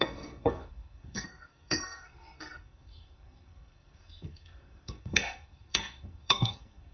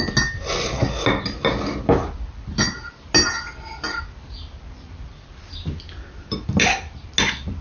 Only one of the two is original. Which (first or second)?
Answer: second